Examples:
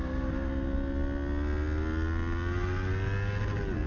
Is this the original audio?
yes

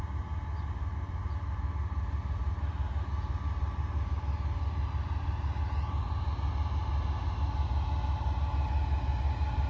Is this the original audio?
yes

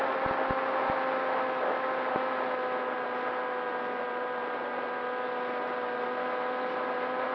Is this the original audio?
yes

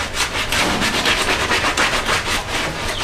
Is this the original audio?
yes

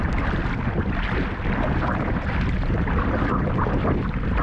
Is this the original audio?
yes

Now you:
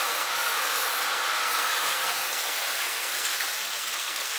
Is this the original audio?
no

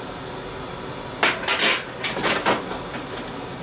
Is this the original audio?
yes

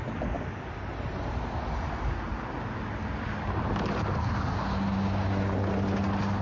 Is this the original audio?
yes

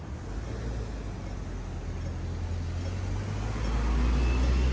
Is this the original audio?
yes